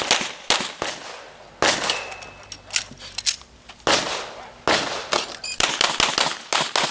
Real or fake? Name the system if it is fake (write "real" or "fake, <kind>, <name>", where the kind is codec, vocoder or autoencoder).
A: real